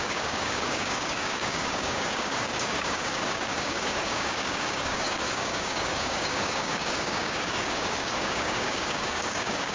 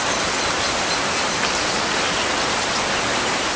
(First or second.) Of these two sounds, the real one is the second